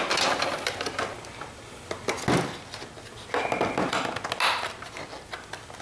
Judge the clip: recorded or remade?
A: recorded